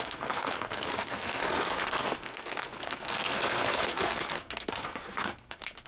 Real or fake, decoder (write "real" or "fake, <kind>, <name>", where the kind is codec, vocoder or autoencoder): fake, codec, SNAC